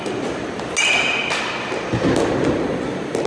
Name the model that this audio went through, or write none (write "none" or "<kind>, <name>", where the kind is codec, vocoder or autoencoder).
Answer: none